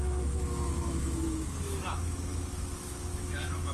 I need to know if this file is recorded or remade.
remade